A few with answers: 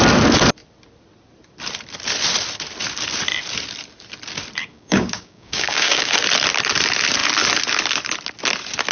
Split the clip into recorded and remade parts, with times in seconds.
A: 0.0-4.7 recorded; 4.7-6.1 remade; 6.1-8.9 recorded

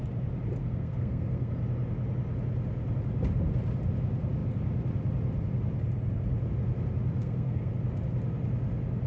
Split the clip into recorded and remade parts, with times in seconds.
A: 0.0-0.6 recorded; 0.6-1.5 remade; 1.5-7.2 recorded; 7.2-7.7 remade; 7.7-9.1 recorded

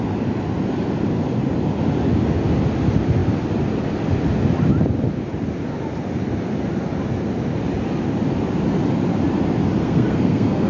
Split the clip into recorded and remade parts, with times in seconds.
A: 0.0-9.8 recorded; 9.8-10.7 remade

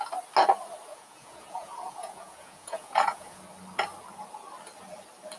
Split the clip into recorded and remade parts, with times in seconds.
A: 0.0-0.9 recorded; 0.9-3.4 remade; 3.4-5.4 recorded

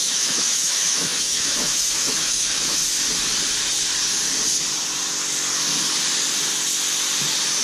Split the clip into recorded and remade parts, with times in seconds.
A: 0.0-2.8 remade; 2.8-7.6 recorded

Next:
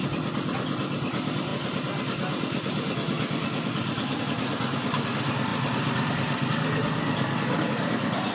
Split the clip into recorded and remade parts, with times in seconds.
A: 0.0-8.3 recorded